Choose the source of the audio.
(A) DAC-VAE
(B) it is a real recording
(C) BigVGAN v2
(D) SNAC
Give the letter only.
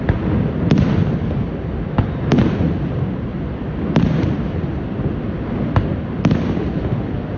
B